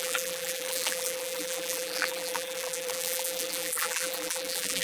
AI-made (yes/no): yes